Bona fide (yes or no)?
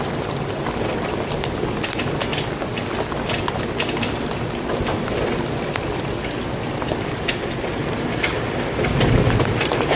yes